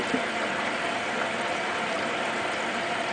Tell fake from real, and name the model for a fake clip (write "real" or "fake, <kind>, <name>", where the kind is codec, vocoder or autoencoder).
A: fake, vocoder, BigVGAN v2